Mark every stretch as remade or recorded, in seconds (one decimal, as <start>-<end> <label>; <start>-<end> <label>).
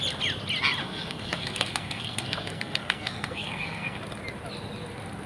0.0-0.8 recorded; 0.8-4.0 remade; 4.0-5.3 recorded